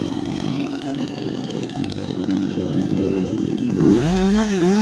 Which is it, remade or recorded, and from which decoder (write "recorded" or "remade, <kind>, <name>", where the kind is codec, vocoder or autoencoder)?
remade, codec, SNAC